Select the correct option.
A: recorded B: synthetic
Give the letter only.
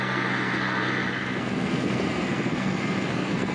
B